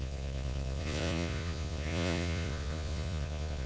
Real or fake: fake